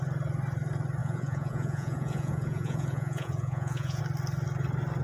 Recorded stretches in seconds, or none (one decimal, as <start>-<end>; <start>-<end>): 0.0-1.0; 4.0-5.0